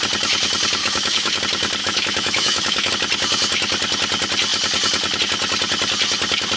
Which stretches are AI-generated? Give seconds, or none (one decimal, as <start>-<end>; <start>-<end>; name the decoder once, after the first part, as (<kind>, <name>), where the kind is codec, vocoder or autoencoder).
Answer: 0.8-1.4 (autoencoder, DAC-VAE); 1.8-2.9